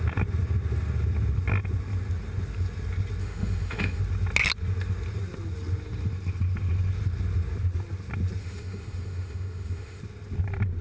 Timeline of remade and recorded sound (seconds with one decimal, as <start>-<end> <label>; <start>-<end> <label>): 0.0-3.2 recorded; 3.2-4.0 remade; 4.0-8.4 recorded; 8.4-10.0 remade; 10.0-10.8 recorded